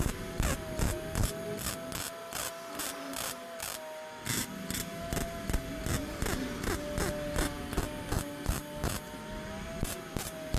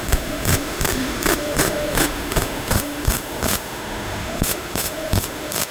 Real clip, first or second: first